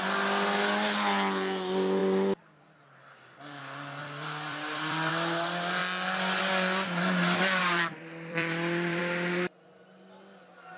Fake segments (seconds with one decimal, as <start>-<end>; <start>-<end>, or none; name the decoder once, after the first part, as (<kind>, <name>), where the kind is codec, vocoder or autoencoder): 4.0-5.1 (vocoder, BigVGAN v2); 7.6-9.0